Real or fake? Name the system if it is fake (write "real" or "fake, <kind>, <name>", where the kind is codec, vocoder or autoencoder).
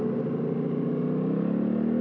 real